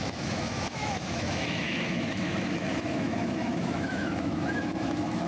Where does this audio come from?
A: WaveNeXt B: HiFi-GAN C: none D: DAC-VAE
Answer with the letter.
D